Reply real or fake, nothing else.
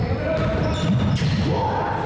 real